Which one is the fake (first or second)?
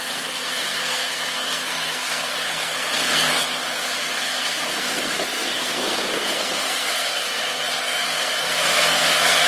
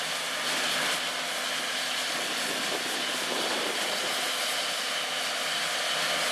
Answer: first